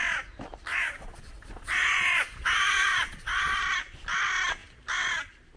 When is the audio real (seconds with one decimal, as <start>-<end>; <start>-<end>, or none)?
0.0-0.7; 3.6-5.6